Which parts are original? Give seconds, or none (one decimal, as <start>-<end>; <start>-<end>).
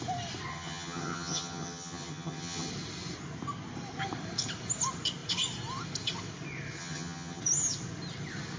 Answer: 0.0-0.5; 2.7-6.8; 7.4-8.6